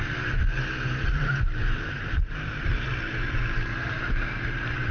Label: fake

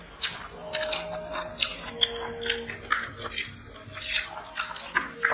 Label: real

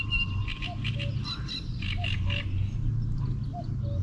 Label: real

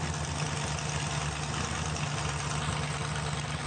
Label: real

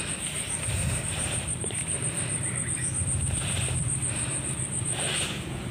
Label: fake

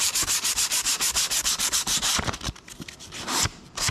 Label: fake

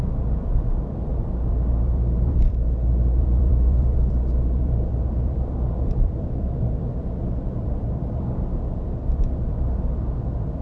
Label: fake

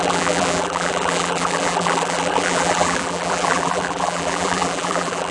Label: fake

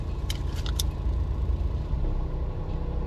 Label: real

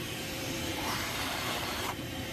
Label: fake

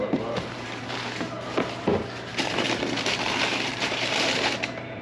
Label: fake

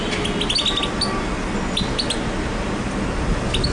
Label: real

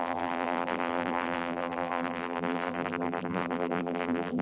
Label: fake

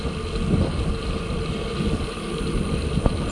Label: real